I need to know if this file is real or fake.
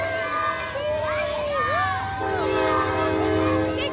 real